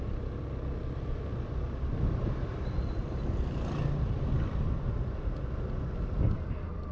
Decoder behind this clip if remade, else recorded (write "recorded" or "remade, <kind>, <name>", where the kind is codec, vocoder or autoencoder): recorded